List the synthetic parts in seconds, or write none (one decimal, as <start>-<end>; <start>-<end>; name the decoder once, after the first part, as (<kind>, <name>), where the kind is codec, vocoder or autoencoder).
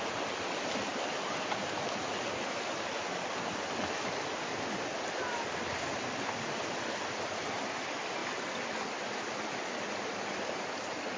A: 0.9-3.0 (vocoder, BigVGAN v2); 8.2-10.7